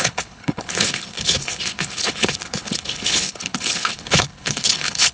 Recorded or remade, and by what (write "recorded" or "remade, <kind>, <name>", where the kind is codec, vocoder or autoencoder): remade, codec, HILCodec